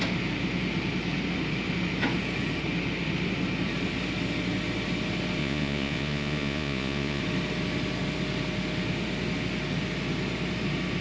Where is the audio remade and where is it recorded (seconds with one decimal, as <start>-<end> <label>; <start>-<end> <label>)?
0.0-5.4 recorded; 5.4-7.2 remade; 7.2-11.0 recorded